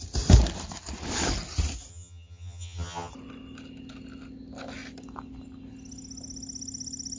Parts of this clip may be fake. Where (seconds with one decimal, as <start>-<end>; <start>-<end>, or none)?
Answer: 1.9-3.1